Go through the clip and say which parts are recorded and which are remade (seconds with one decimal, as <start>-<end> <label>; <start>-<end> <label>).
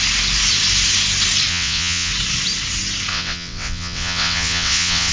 0.0-1.5 recorded; 1.5-2.1 remade; 2.1-3.1 recorded; 3.1-5.1 remade